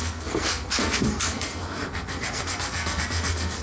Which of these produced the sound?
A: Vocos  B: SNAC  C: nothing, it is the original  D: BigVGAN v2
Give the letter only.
B